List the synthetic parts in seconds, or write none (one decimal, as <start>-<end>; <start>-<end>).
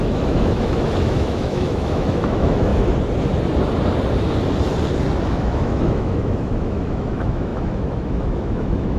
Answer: 0.0-2.7; 5.3-9.0